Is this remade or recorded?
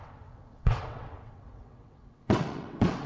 remade